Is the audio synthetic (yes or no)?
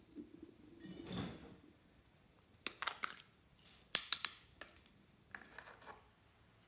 no